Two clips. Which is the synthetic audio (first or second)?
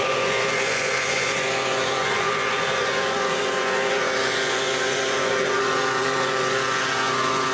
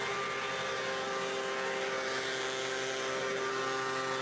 first